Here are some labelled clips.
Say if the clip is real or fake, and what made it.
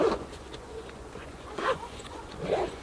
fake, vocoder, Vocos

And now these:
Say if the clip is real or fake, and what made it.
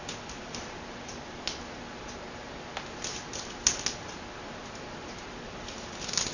real